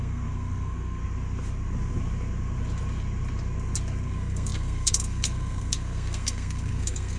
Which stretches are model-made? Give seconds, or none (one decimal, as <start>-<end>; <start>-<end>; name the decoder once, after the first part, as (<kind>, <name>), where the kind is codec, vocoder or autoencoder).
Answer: 0.0-1.0 (codec, SNAC); 4.0-7.2